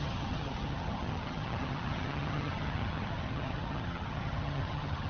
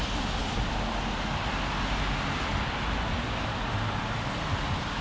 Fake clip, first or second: first